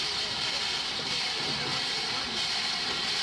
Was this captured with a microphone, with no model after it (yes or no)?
no